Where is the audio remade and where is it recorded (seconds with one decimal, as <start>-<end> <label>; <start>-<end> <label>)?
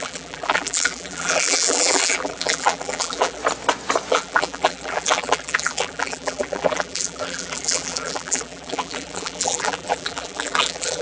0.0-3.4 remade; 3.4-4.1 recorded; 4.1-11.0 remade